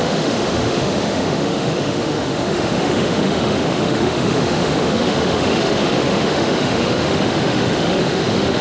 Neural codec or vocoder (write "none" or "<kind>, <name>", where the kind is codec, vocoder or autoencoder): autoencoder, DAC-VAE